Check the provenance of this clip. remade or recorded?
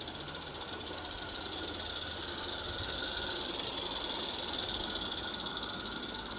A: recorded